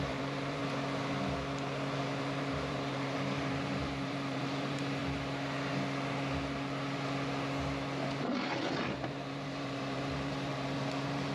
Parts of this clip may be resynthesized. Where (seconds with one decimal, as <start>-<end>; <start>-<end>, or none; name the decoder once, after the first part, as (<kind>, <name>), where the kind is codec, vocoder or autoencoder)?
0.0-0.6 (vocoder, BigVGAN v2); 2.2-5.0; 9.1-11.3